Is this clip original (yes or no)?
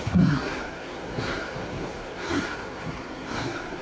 no